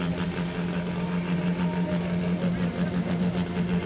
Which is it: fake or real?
real